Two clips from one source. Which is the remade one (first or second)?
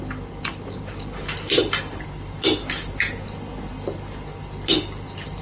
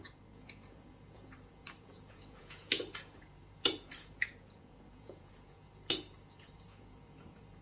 second